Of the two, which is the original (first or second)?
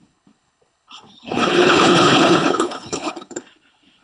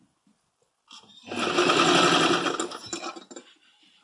second